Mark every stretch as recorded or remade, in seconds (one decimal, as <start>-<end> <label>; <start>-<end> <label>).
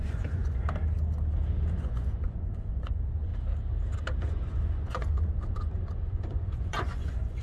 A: 0.0-0.6 remade; 0.6-1.7 recorded; 1.7-3.3 remade; 3.3-4.2 recorded; 4.2-7.4 remade